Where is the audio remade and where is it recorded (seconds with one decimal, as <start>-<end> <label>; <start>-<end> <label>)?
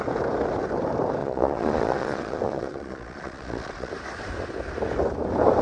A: 0.0-1.2 recorded; 1.2-3.9 remade; 3.9-5.6 recorded